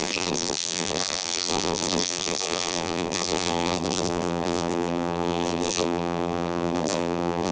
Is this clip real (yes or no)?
no